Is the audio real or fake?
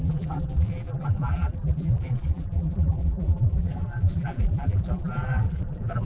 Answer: fake